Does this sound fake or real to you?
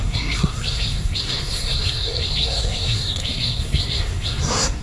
fake